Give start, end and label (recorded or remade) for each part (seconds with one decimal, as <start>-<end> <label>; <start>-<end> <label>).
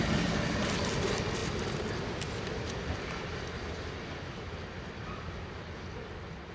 0.0-6.5 recorded